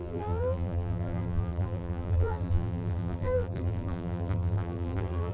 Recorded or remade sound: remade